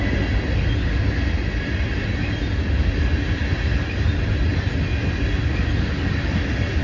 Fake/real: real